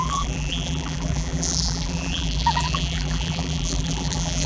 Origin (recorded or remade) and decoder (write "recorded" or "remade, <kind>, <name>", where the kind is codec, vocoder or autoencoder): remade, vocoder, BigVGAN v2